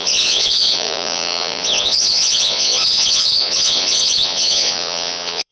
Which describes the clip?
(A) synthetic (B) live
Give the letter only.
A